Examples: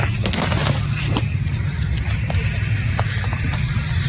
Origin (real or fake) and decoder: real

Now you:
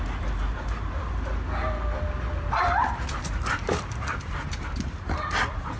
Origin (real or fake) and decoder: real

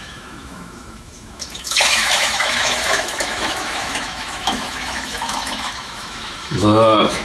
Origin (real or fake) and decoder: fake, autoencoder, DAC-VAE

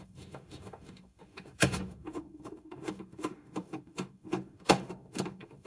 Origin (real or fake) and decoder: fake, autoencoder, DAC-VAE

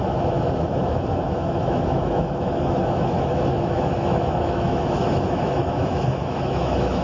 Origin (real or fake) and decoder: fake, autoencoder, DAC-VAE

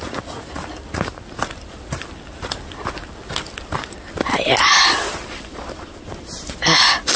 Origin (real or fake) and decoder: real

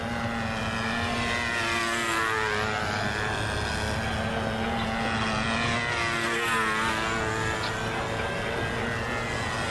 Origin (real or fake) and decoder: real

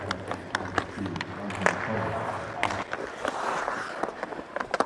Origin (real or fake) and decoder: real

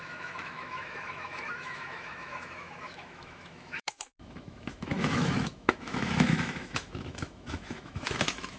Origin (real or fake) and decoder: fake, autoencoder, DAC-VAE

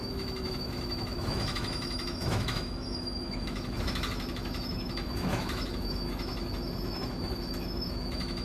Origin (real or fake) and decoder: fake, autoencoder, DAC-VAE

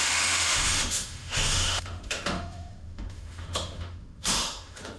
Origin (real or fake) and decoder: fake, autoencoder, DAC-VAE